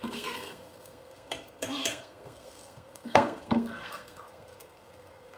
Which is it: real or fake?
fake